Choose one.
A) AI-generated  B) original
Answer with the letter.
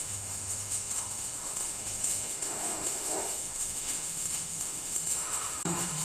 A